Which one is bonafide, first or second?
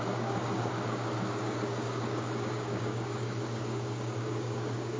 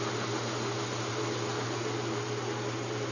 second